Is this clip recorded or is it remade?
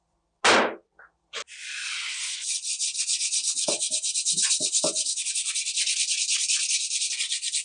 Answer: recorded